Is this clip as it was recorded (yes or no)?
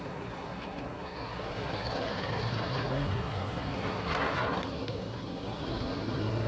no